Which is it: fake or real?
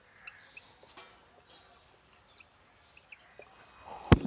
real